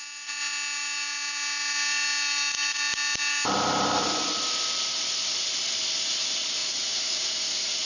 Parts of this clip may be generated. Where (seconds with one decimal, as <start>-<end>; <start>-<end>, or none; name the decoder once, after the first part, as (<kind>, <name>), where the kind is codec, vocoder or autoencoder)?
6.6-7.8 (vocoder, Vocos)